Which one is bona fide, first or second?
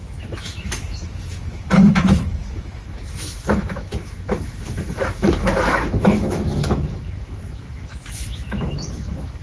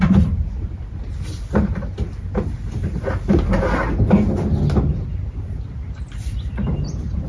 second